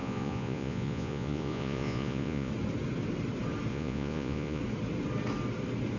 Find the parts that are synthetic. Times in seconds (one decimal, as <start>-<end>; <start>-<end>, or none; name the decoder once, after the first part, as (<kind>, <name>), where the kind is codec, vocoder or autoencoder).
0.0-2.5 (vocoder, Vocos); 3.7-4.6